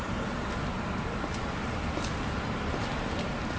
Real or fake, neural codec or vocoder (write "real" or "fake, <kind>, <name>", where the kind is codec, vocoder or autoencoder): real